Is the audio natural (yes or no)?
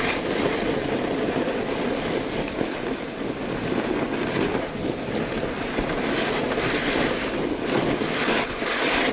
yes